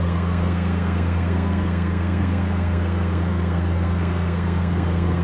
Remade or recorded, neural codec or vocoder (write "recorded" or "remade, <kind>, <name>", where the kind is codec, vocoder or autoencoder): remade, codec, SNAC